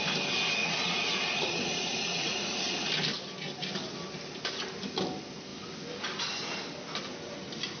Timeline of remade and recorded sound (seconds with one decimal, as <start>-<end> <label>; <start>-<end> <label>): 0.0-0.6 recorded; 0.6-2.9 remade; 2.9-7.8 recorded